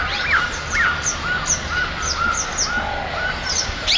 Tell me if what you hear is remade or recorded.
recorded